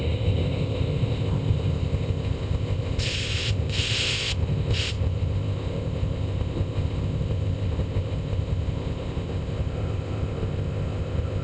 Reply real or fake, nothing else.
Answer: fake